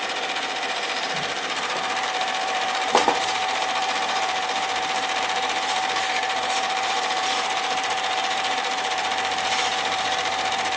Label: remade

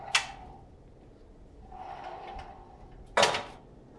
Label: recorded